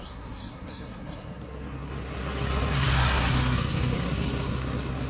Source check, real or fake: fake